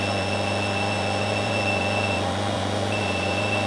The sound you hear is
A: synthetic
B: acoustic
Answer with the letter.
A